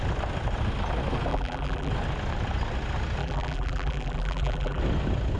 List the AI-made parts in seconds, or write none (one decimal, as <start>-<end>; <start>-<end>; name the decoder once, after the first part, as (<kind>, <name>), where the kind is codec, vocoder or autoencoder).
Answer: 1.3-1.9 (vocoder, BigVGAN v2); 3.2-4.8